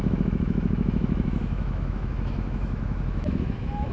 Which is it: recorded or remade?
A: remade